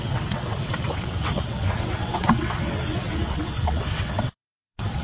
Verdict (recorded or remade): remade